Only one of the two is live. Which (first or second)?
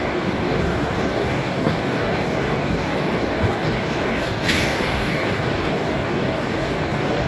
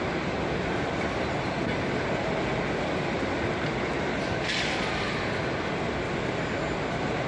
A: second